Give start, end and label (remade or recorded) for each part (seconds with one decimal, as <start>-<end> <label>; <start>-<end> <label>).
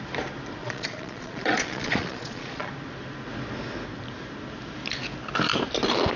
0.0-0.6 recorded; 0.6-2.7 remade; 2.7-6.2 recorded